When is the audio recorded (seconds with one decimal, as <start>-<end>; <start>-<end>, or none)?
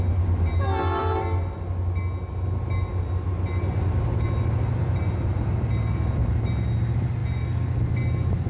0.0-8.5